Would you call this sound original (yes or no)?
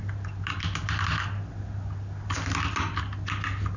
yes